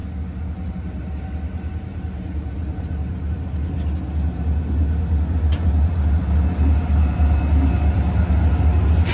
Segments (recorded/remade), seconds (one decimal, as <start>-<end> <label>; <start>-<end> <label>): 0.0-9.1 recorded